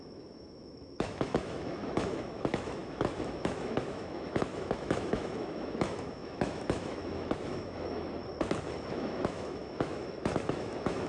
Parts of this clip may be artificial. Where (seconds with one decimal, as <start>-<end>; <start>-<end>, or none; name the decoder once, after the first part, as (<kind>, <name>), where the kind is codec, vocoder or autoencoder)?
0.0-8.2 (autoencoder, DAC-VAE); 8.9-11.1

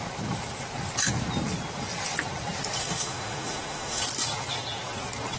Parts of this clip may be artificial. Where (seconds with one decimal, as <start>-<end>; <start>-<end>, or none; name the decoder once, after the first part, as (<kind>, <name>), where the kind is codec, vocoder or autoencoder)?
2.8-4.0 (autoencoder, DAC-VAE)

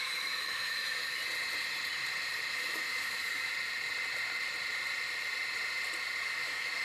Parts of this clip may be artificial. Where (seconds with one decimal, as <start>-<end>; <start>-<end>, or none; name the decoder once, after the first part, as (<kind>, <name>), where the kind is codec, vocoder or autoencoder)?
0.0-1.2 (autoencoder, DAC-VAE); 2.5-3.5; 6.2-6.8

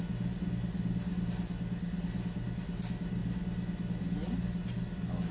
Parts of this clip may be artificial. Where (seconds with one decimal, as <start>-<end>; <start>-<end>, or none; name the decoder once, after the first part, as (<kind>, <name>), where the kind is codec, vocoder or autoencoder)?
none

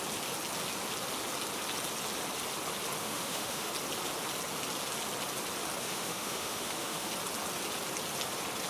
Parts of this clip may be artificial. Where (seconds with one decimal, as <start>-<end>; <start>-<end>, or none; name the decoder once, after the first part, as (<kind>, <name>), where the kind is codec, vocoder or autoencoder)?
3.0-3.7 (autoencoder, DAC-VAE); 5.8-7.1

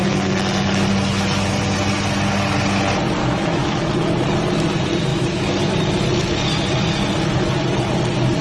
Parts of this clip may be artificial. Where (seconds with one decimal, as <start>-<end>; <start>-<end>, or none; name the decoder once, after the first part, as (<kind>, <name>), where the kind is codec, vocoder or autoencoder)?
3.2-3.9 (autoencoder, DAC-VAE); 5.1-5.7